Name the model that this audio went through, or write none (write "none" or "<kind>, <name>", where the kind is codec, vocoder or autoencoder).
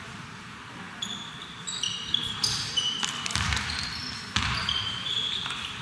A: vocoder, BigVGAN v2